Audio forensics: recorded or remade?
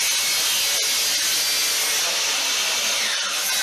recorded